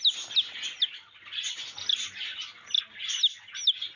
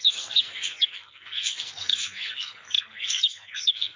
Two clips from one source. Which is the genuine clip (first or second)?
first